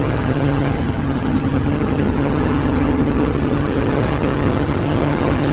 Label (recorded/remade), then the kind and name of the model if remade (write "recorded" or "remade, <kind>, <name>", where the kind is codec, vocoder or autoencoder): remade, vocoder, HiFi-GAN